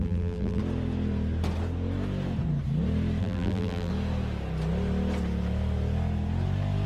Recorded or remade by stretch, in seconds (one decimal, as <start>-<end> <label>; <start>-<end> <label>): 0.0-0.6 remade; 0.6-3.2 recorded; 3.2-3.9 remade; 3.9-6.9 recorded